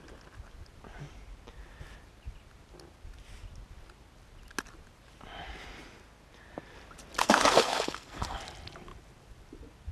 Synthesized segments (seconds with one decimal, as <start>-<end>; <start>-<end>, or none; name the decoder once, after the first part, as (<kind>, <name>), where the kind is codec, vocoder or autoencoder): 7.2-8.4 (codec, SNAC)